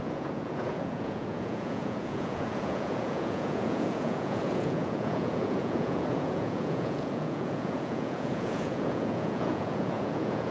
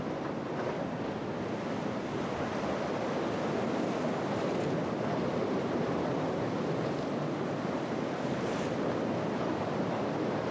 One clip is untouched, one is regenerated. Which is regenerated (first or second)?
first